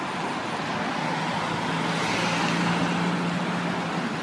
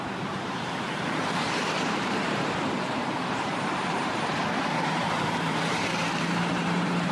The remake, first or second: second